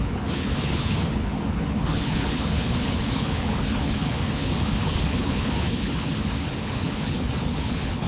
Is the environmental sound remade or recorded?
remade